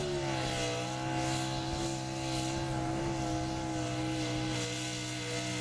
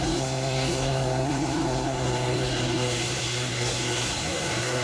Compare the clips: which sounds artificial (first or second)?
second